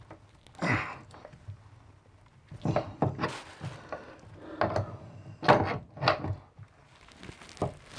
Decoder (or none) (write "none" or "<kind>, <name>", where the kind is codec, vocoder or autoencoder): none